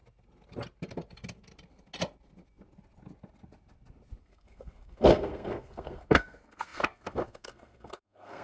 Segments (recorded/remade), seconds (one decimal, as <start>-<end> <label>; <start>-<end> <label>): 0.0-4.2 recorded; 4.2-8.4 remade